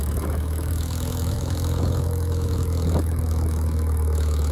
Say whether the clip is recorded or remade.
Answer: remade